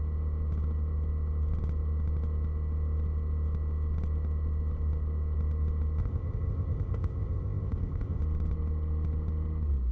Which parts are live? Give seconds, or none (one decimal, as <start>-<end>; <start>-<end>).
0.0-6.0; 8.2-9.9